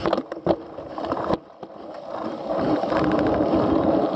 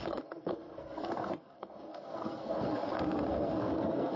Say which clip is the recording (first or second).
first